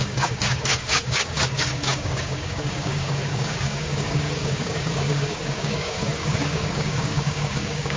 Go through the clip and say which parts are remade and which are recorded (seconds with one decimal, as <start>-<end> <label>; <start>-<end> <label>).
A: 0.0-8.0 remade